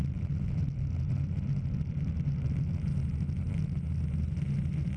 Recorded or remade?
recorded